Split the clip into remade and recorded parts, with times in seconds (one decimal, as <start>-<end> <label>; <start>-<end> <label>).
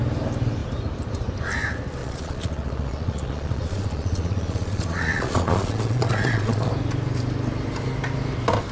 0.0-2.0 recorded; 2.0-6.7 remade; 6.7-8.7 recorded